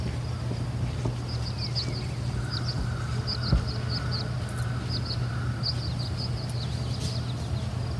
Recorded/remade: recorded